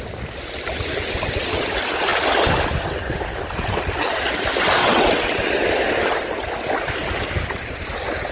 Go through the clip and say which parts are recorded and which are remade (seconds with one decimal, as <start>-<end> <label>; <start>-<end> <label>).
0.0-4.8 recorded; 4.8-5.7 remade; 5.7-8.3 recorded